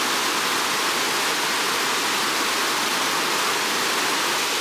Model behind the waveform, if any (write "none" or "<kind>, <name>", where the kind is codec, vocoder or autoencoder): none